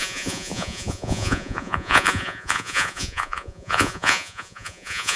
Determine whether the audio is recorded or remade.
remade